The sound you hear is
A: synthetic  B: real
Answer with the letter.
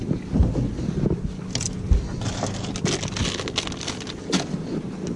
B